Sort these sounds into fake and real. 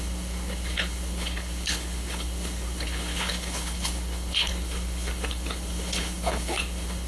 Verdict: fake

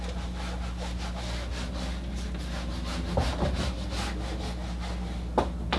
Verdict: real